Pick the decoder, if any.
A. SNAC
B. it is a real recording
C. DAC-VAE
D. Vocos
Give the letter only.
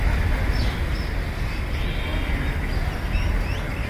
B